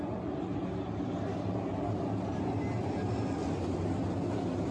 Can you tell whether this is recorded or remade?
recorded